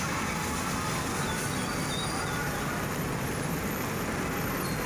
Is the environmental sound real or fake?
real